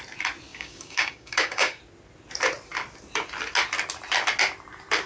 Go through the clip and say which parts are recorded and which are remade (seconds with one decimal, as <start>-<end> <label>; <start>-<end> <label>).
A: 0.0-0.5 recorded; 0.5-1.8 remade; 1.8-5.1 recorded